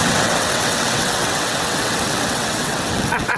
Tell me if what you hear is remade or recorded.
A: remade